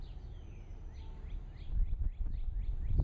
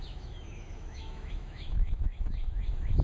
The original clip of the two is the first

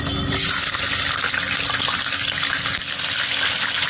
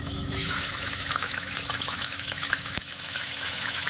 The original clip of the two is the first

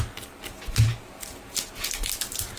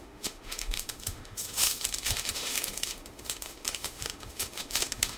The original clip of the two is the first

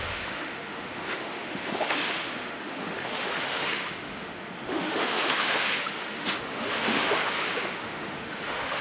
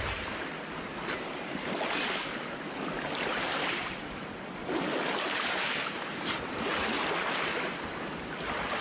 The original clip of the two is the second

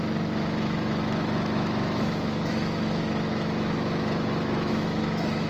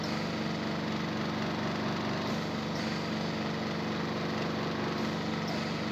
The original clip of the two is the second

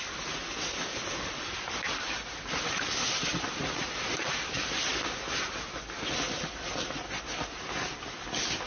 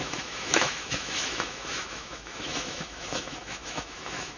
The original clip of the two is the first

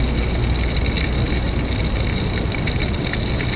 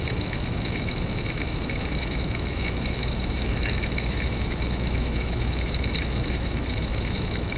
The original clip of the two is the first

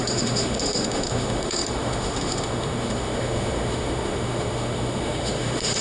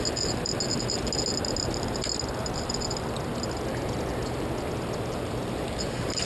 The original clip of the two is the second